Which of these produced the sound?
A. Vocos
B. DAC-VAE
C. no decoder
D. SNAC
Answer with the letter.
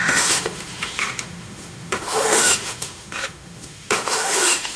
B